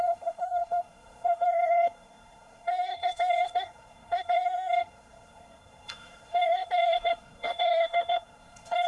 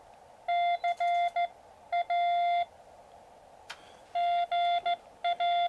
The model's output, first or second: first